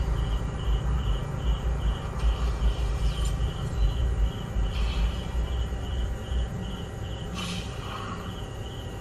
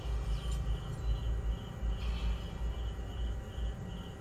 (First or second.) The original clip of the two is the second